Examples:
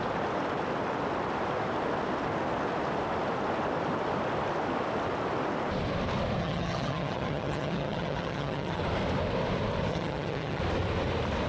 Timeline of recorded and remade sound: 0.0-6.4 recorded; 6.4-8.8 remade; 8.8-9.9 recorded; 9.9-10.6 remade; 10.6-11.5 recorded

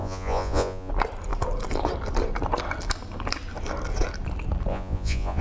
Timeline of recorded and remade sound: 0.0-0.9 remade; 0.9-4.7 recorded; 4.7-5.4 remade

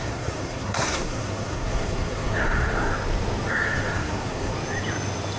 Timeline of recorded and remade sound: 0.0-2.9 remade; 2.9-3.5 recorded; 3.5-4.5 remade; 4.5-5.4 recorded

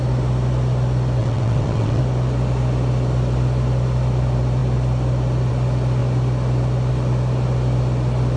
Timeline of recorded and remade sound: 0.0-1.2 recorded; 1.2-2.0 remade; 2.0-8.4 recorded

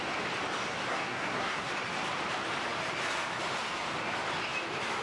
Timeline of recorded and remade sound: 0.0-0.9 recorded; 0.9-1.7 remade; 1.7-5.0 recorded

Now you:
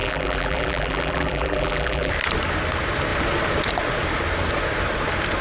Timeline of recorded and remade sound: 0.0-2.1 remade; 2.1-5.4 recorded